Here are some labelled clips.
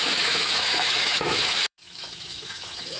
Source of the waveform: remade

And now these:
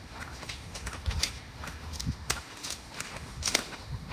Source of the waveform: remade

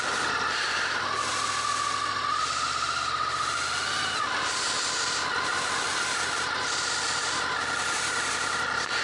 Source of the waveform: recorded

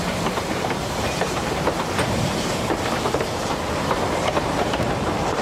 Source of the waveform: remade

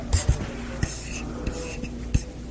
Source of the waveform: recorded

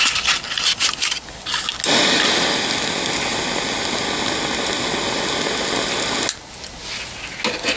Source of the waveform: recorded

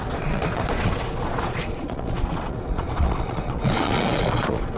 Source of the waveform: remade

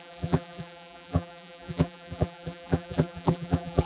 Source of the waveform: remade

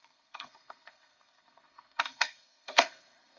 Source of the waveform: remade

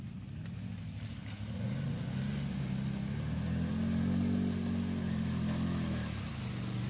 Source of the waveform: recorded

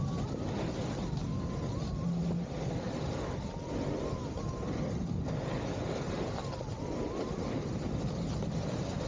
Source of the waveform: recorded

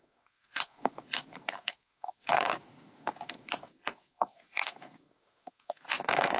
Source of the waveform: remade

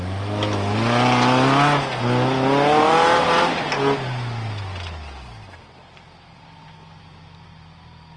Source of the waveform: recorded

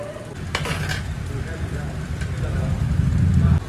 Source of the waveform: recorded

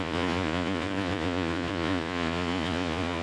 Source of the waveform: remade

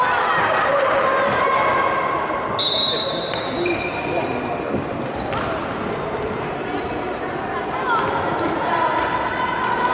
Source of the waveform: recorded